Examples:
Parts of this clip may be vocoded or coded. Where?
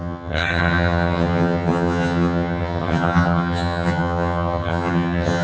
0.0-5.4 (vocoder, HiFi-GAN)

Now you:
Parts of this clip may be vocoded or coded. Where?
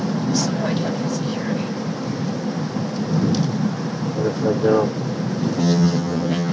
5.6-6.5 (vocoder, HiFi-GAN)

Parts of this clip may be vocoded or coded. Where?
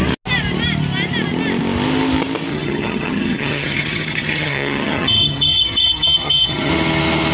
2.5-6.7 (vocoder, HiFi-GAN)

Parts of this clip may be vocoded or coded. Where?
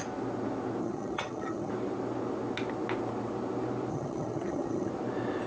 0.8-1.7 (vocoder, HiFi-GAN); 3.9-4.9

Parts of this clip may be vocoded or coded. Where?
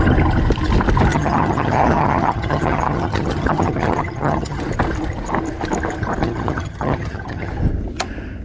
1.1-4.6 (vocoder, HiFi-GAN); 6.2-7.5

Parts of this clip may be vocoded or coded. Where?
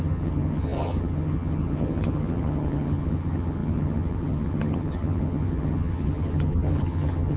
0.0-7.4 (vocoder, HiFi-GAN)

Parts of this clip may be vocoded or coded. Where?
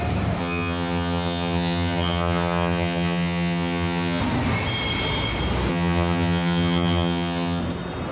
0.4-4.2 (vocoder, HiFi-GAN); 5.7-7.6